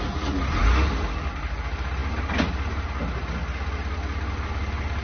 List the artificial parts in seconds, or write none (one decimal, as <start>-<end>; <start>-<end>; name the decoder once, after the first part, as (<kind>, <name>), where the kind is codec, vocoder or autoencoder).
none